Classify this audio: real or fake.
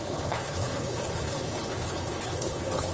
fake